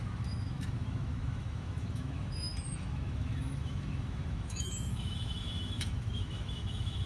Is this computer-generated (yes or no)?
yes